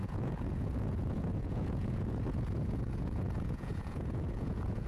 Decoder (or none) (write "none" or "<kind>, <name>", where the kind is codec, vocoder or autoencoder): vocoder, Vocos